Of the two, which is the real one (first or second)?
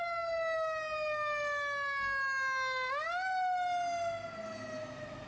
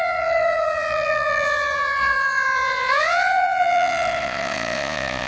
first